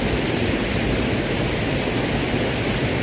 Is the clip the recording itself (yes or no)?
yes